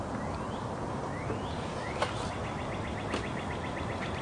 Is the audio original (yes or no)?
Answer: yes